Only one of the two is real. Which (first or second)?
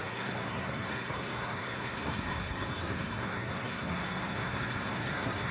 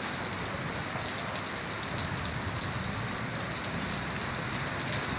second